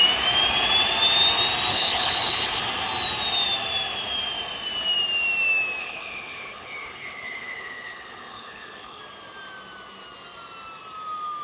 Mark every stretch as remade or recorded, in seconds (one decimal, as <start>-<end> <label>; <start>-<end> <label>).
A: 0.0-1.7 recorded; 1.7-2.6 remade; 2.6-5.8 recorded; 5.8-9.0 remade; 9.0-11.4 recorded